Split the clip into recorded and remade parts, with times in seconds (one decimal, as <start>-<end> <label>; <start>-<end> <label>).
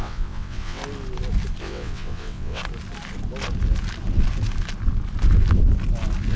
0.0-0.8 remade; 0.8-1.6 recorded; 1.6-2.6 remade; 2.6-6.4 recorded